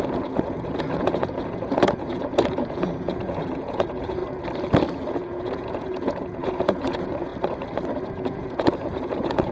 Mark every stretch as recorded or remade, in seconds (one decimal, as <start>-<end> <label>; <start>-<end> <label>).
0.0-4.2 remade; 4.2-4.9 recorded; 4.9-7.3 remade; 7.3-8.1 recorded; 8.1-9.5 remade